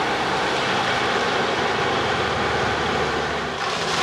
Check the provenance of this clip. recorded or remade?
recorded